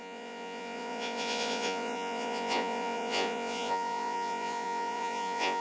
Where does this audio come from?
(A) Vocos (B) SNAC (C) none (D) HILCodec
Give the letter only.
A